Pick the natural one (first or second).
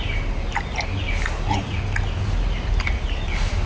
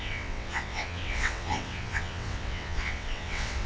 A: first